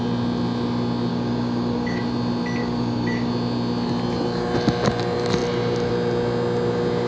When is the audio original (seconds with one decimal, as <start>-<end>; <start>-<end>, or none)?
0.0-1.1; 2.0-2.6; 3.3-7.1